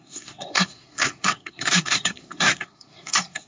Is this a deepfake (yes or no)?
yes